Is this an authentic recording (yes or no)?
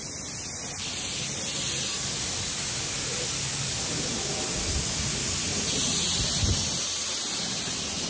yes